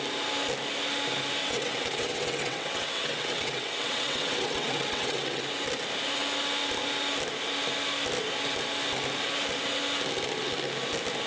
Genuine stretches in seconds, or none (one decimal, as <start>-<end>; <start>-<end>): 0.0-1.4; 5.4-11.3